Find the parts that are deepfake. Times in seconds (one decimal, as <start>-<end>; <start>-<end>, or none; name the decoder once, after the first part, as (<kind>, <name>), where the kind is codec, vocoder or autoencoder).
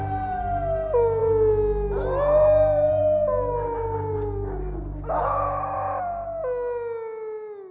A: none